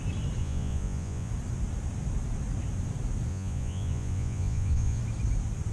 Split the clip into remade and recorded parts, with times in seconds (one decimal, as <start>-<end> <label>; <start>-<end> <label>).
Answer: 0.0-0.4 recorded; 0.4-1.3 remade; 1.3-3.3 recorded; 3.3-5.0 remade; 5.0-5.7 recorded